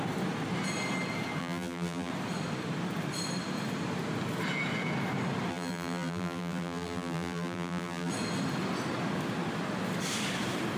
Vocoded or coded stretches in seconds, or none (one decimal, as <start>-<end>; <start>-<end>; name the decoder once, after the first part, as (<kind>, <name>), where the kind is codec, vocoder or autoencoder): 1.4-2.1 (vocoder, BigVGAN v2); 5.5-8.1